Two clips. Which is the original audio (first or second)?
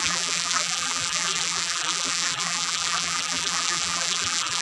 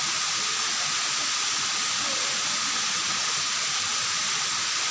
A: second